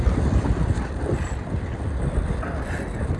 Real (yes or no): yes